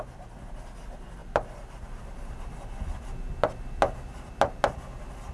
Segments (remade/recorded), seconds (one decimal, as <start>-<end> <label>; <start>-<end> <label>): 0.0-5.3 recorded

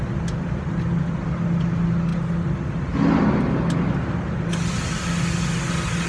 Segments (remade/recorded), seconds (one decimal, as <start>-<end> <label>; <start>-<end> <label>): 0.0-6.1 recorded

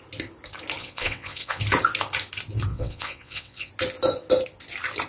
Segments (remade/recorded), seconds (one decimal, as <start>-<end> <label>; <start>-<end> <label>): 0.0-0.8 recorded; 0.8-1.6 remade; 1.6-2.7 recorded; 2.7-3.7 remade; 3.7-5.1 recorded